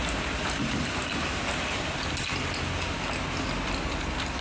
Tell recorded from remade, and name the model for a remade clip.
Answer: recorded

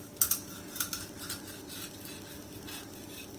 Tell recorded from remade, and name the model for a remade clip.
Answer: recorded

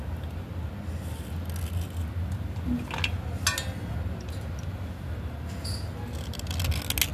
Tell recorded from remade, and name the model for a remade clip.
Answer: recorded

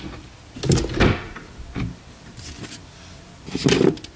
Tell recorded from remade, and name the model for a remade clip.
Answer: recorded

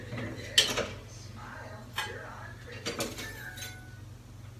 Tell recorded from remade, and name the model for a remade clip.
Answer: recorded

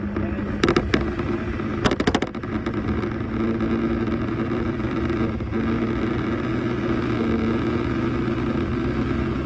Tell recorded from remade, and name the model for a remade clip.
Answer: recorded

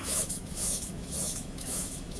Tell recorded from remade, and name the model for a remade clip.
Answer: remade, autoencoder, DAC-VAE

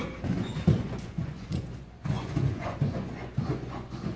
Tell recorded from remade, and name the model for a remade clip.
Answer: remade, vocoder, Vocos